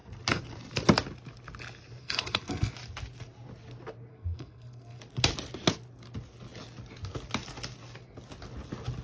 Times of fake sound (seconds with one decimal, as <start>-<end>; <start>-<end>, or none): 2.0-2.7; 4.1-5.0